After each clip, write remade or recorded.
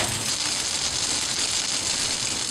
recorded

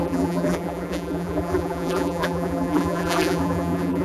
remade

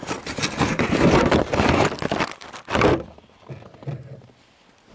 remade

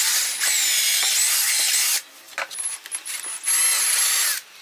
recorded